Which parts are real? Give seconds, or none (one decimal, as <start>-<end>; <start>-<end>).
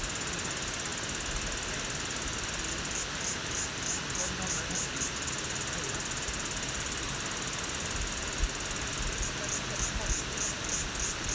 0.0-11.3